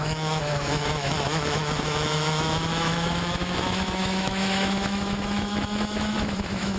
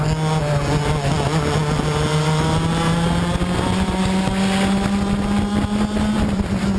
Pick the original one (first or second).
second